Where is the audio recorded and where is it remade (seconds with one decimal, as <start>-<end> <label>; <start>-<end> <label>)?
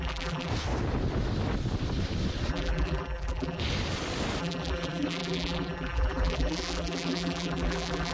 0.0-0.5 remade; 0.5-2.5 recorded; 2.5-3.6 remade; 3.6-4.4 recorded; 4.4-8.1 remade